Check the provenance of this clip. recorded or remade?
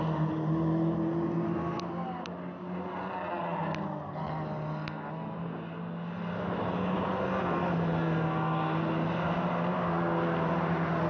recorded